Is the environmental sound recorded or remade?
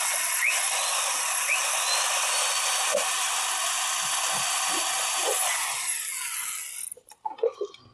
recorded